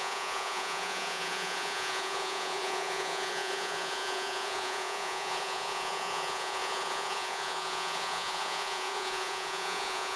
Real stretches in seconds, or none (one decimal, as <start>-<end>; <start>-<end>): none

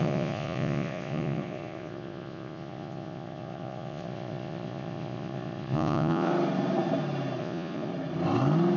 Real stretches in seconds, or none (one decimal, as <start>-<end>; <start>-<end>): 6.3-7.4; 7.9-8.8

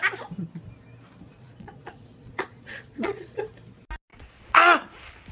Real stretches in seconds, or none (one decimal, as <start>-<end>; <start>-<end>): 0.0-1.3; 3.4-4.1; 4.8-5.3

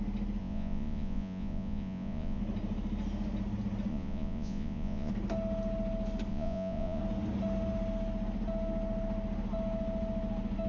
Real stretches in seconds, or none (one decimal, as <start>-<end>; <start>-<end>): 0.0-0.4; 2.4-3.9; 5.1-6.3; 7.0-10.7

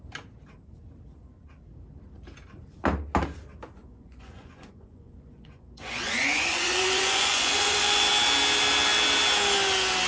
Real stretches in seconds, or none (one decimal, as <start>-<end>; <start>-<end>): 0.0-3.8; 8.1-10.1

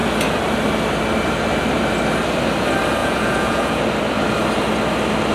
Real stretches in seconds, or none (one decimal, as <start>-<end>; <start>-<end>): 0.0-3.0; 3.8-5.3

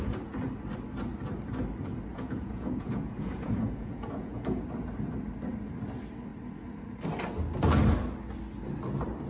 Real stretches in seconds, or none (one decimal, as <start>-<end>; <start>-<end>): 0.0-2.1; 4.6-9.3

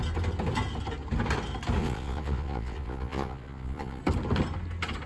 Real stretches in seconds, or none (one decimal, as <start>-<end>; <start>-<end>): 0.0-1.8; 4.0-5.1